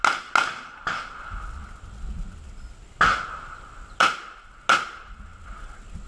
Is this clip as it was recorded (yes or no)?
yes